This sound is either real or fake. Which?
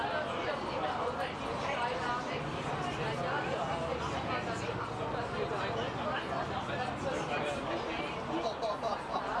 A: real